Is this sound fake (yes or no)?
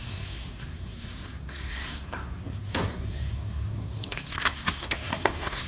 yes